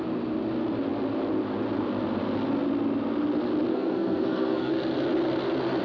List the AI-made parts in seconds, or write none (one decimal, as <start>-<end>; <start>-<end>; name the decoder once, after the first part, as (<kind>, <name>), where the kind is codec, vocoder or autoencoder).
3.7-4.7 (codec, SNAC)